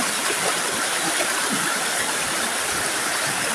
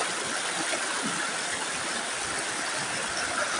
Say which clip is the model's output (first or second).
first